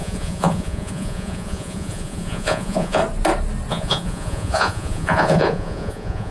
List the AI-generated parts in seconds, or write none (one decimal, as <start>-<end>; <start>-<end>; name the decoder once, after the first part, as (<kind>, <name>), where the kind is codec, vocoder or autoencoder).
0.0-3.0 (vocoder, Vocos); 3.7-6.3